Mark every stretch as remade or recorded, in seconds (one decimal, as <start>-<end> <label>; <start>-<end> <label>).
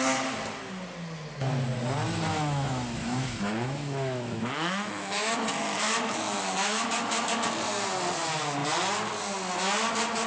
0.0-2.3 recorded; 2.3-7.3 remade; 7.3-10.3 recorded